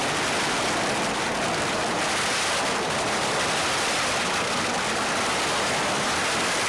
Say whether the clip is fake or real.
fake